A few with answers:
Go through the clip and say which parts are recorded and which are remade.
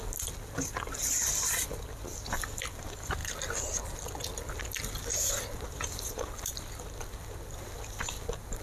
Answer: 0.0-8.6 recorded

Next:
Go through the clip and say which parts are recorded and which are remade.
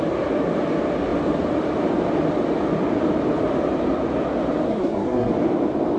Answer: 0.0-4.7 recorded; 4.7-5.3 remade; 5.3-6.0 recorded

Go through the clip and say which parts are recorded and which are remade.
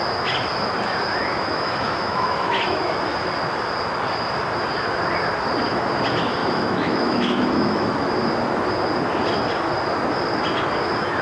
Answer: 0.0-1.2 recorded; 1.2-2.9 remade; 2.9-6.4 recorded; 6.4-8.1 remade; 8.1-11.2 recorded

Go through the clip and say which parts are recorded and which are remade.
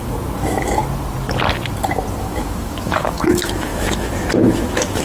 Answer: 0.0-0.8 remade; 0.8-2.2 recorded; 2.2-5.0 remade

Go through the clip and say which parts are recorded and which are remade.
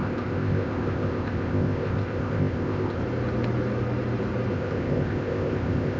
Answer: 0.0-3.0 remade; 3.0-4.5 recorded; 4.5-6.0 remade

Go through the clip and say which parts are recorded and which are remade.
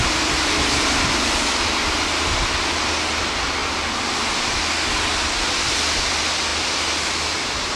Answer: 0.0-3.6 recorded; 3.6-4.3 remade; 4.3-6.5 recorded; 6.5-7.8 remade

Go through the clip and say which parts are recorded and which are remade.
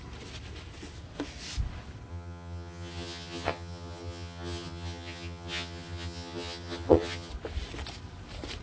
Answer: 0.0-2.1 recorded; 2.1-7.3 remade; 7.3-8.6 recorded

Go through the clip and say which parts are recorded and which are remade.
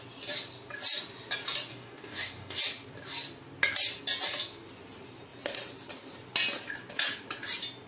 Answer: 0.0-1.7 recorded; 1.7-2.6 remade; 2.6-7.9 recorded